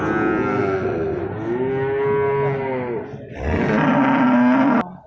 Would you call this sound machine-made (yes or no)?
no